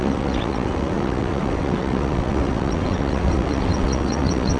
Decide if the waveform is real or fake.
fake